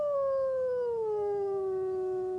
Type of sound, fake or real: real